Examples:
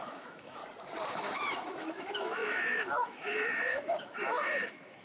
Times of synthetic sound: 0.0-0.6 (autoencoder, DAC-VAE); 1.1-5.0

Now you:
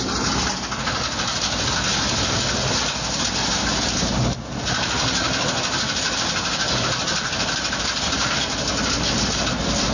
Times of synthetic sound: none